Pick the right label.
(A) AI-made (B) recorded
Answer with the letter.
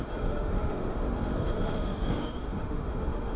A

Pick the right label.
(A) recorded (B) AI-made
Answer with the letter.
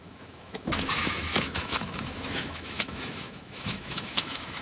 B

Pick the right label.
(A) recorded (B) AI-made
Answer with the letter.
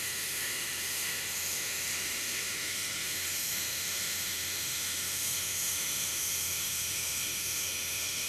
B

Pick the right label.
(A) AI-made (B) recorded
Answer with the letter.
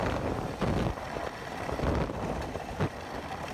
B